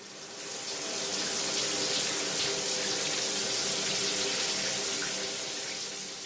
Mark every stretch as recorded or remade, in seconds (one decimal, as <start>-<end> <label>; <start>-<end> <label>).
0.0-6.3 recorded